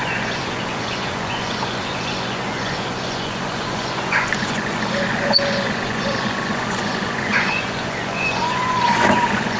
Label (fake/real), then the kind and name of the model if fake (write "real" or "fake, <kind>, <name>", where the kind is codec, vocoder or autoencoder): fake, vocoder, Vocos